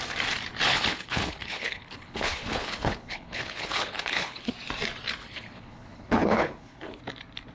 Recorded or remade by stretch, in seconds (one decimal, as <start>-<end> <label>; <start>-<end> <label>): 0.0-0.7 recorded; 0.7-4.5 remade; 4.5-5.2 recorded; 5.2-7.0 remade; 7.0-7.5 recorded